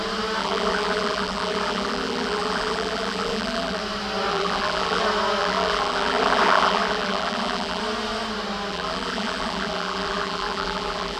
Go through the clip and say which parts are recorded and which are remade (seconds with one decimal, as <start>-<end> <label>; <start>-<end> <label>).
0.0-0.4 recorded; 0.4-3.8 remade; 3.8-4.3 recorded; 4.3-5.0 remade; 5.0-5.4 recorded; 5.4-7.8 remade; 7.8-8.7 recorded; 8.7-11.2 remade